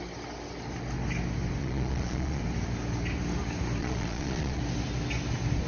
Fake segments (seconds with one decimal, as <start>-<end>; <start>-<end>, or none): 1.6-2.4; 3.8-4.6